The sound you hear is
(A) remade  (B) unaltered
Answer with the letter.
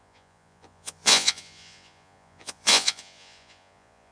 A